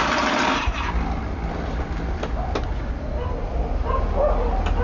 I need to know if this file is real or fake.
real